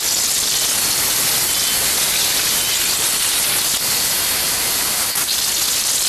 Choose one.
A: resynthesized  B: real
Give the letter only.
B